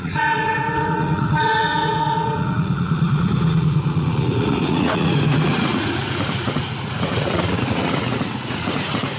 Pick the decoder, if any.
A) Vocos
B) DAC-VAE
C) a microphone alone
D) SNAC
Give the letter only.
A